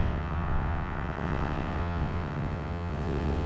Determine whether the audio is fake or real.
fake